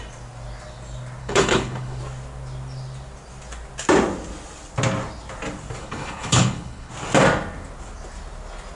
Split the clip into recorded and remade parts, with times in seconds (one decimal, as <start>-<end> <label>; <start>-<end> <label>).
0.0-1.2 recorded; 1.2-2.0 remade; 2.0-5.8 recorded; 5.8-6.9 remade; 6.9-8.7 recorded